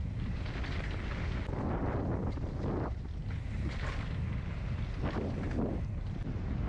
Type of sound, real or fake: real